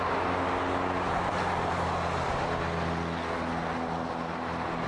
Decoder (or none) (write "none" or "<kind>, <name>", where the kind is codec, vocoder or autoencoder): none